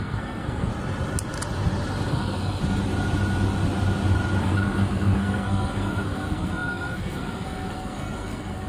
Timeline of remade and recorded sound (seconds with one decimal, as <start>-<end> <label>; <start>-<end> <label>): 0.0-0.7 remade; 0.7-2.1 recorded; 2.1-2.6 remade; 2.6-4.4 recorded; 4.4-8.7 remade